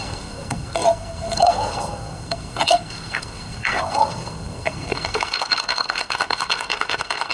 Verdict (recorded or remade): remade